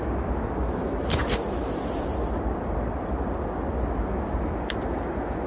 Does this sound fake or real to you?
real